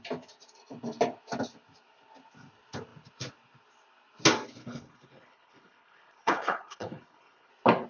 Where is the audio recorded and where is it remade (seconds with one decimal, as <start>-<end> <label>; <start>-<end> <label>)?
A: 0.0-4.6 recorded; 4.6-7.5 remade; 7.5-7.9 recorded